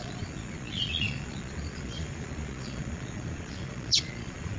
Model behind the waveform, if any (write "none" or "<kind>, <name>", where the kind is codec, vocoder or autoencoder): vocoder, Vocos